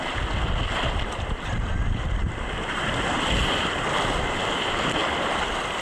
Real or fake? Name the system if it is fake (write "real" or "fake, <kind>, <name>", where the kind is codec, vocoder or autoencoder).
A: real